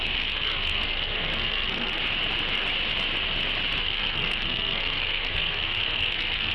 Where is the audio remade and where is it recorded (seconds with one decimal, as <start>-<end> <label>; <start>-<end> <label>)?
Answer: 0.0-2.0 remade; 2.0-3.8 recorded; 3.8-6.5 remade

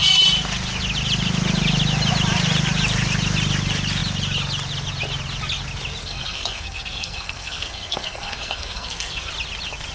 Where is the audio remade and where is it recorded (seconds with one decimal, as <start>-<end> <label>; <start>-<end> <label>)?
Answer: 0.0-6.0 recorded; 6.0-9.3 remade; 9.3-9.9 recorded

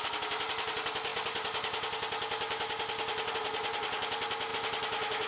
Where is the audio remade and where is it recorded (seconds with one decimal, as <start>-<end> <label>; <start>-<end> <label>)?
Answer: 0.0-5.3 recorded